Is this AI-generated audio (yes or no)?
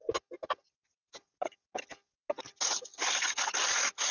no